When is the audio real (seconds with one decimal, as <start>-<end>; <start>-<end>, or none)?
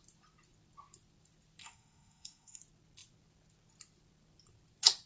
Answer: 0.0-1.6; 2.6-5.1